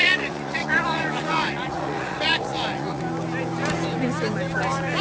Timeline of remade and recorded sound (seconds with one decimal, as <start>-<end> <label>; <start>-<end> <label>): 0.0-3.0 remade; 3.0-5.0 recorded